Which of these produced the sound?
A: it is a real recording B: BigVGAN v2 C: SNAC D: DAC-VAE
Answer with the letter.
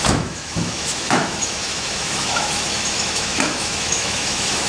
D